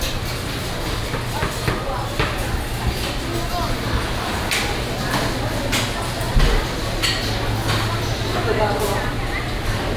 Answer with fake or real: real